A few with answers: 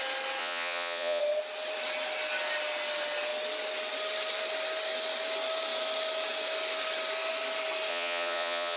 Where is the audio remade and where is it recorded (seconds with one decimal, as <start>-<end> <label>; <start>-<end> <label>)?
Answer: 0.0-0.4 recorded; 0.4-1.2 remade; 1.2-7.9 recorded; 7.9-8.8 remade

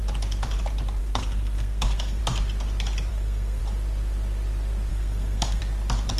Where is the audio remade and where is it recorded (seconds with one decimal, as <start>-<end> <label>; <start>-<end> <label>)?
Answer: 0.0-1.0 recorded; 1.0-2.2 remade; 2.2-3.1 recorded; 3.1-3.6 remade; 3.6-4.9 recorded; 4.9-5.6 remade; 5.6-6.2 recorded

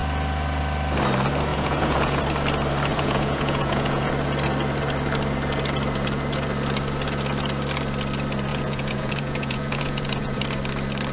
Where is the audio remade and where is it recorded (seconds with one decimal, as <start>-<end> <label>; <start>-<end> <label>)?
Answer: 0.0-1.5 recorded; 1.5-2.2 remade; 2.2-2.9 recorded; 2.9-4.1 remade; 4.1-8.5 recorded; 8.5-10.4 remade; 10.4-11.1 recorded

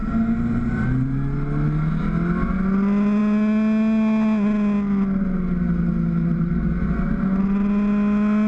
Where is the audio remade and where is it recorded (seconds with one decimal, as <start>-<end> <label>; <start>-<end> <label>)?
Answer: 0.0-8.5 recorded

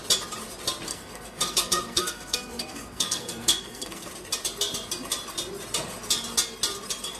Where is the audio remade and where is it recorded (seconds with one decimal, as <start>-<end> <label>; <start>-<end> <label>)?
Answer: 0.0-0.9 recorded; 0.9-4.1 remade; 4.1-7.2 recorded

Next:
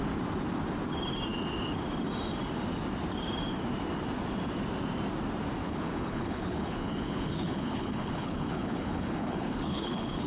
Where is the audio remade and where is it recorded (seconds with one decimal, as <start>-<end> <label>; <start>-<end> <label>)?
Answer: 0.0-5.6 recorded; 5.6-10.3 remade

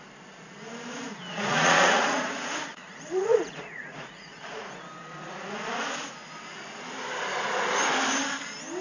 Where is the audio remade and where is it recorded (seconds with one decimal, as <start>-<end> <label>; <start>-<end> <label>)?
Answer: 0.0-1.3 recorded; 1.3-4.7 remade; 4.7-8.8 recorded